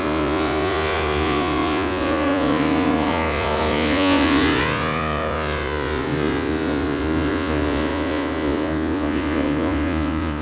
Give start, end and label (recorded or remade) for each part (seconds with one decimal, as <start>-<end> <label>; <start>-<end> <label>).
0.0-10.4 remade